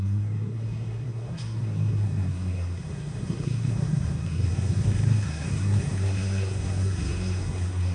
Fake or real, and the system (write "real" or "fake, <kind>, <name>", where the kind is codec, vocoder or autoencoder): fake, codec, SNAC